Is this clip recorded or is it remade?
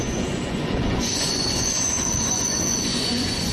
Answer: remade